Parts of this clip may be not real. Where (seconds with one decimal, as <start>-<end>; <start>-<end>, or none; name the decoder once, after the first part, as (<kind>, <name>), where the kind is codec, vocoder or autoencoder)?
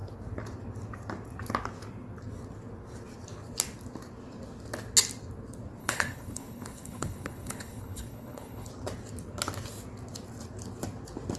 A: 5.8-8.7 (codec, HILCodec)